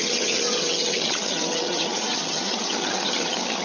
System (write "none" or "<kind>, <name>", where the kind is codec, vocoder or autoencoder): vocoder, HiFi-GAN